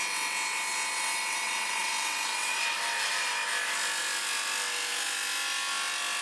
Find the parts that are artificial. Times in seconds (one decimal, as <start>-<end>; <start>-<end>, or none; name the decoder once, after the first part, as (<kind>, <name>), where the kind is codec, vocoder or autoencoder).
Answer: none